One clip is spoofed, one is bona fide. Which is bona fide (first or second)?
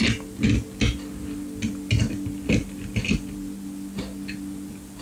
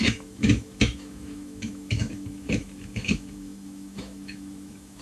first